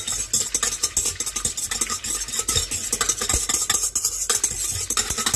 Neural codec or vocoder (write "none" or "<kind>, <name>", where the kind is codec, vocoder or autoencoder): none